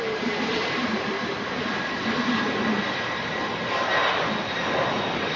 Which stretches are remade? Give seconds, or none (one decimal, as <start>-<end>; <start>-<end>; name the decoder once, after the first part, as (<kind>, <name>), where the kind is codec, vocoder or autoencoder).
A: none